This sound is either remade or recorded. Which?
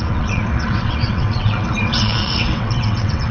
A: remade